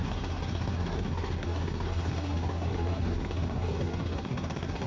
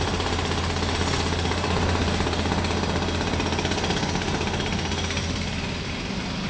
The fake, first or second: first